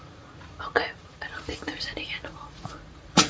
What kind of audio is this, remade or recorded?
remade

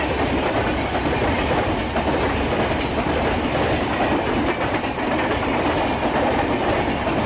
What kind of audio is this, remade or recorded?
recorded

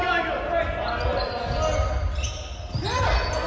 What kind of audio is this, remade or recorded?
recorded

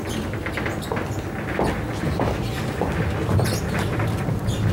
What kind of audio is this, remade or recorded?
recorded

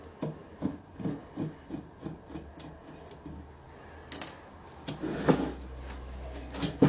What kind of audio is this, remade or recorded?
recorded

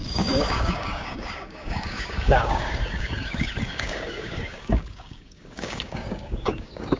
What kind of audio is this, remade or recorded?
remade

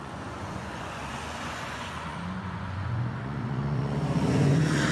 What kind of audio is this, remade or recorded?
remade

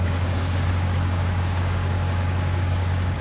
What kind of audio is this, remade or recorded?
remade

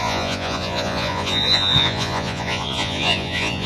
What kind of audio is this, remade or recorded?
remade